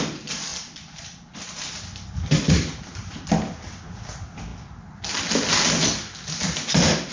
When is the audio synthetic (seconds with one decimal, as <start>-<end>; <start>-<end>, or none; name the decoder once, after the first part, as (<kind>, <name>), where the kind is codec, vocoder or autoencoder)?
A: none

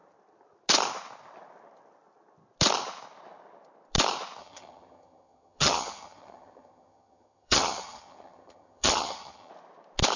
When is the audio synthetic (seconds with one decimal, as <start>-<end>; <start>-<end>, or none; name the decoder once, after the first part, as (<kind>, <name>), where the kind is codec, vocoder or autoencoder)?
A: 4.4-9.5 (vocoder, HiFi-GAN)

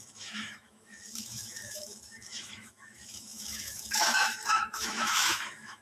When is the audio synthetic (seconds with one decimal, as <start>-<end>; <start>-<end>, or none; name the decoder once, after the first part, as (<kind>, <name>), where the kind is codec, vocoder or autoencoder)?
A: 0.0-5.8 (autoencoder, DAC-VAE)